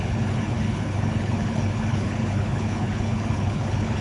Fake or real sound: fake